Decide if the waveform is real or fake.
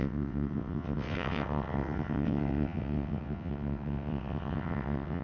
fake